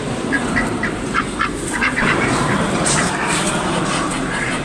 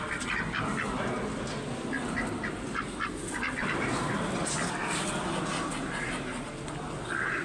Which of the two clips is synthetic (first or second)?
first